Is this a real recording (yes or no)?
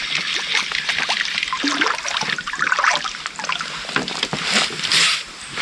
yes